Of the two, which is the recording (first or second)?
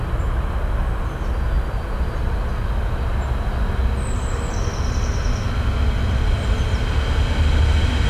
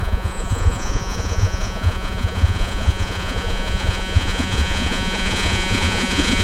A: first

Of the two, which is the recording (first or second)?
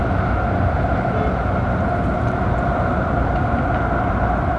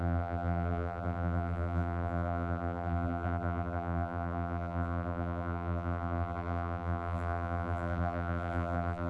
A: first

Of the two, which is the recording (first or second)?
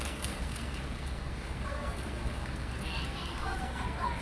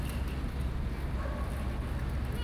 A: second